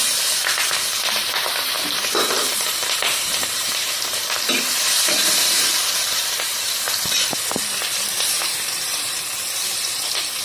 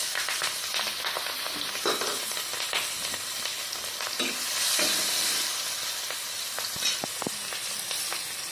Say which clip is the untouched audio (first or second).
second